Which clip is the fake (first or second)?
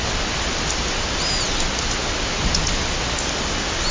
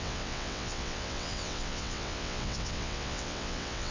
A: second